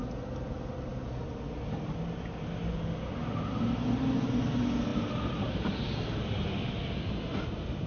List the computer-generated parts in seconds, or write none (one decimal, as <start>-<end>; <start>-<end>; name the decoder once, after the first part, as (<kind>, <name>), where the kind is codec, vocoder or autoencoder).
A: none